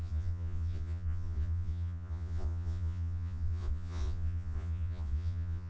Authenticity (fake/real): fake